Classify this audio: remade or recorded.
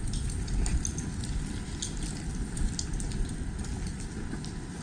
recorded